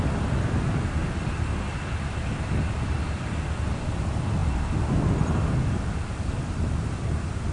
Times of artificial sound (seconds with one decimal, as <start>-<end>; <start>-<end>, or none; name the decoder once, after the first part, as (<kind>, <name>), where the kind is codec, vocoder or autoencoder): none